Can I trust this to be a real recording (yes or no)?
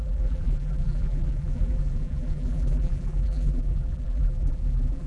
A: no